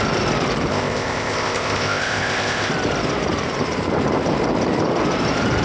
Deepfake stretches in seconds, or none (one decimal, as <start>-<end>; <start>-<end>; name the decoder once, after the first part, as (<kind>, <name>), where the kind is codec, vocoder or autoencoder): 0.7-2.7 (codec, ZipCodec)